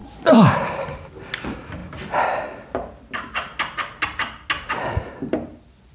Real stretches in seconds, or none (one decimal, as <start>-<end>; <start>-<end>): 0.5-5.9

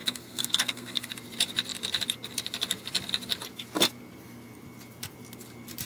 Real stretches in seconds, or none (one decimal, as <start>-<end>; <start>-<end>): 1.1-5.9